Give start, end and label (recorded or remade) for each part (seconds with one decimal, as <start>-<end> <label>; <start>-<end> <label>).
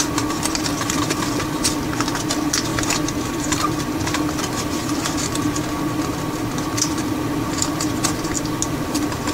0.0-9.3 recorded